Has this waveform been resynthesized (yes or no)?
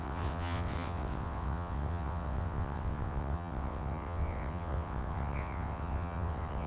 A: yes